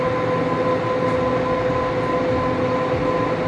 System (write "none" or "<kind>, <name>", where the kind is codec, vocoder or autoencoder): none